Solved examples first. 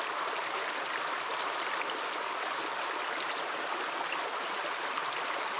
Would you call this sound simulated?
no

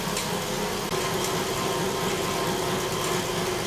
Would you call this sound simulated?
no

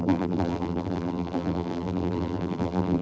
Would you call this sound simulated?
yes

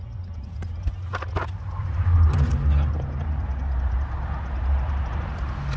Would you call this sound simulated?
no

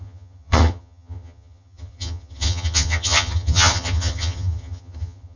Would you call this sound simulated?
yes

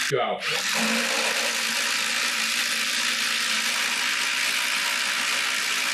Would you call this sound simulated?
no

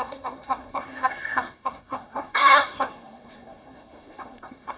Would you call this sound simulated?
yes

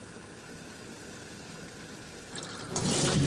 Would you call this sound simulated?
yes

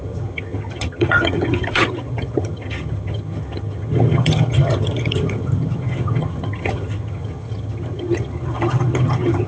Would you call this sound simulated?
yes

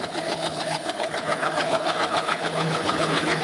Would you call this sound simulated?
yes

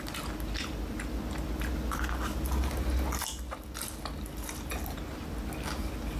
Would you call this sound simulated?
no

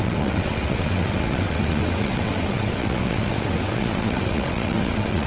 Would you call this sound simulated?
yes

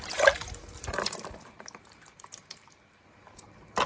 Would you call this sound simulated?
yes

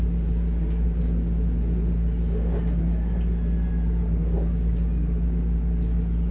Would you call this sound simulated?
no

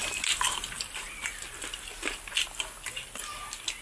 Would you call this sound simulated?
no